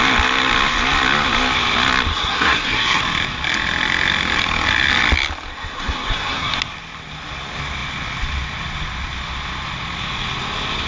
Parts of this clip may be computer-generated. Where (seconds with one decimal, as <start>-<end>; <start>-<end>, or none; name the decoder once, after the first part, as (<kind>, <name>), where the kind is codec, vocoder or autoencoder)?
2.1-3.0 (codec, SNAC); 5.5-6.5